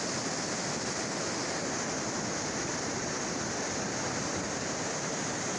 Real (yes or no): yes